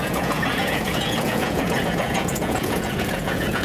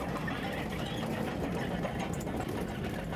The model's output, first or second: first